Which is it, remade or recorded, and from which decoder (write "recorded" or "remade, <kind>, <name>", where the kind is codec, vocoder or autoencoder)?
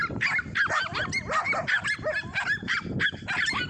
recorded